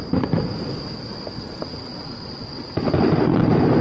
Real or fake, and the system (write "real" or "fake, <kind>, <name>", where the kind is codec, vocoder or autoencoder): real